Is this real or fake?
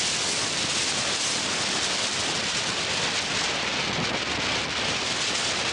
real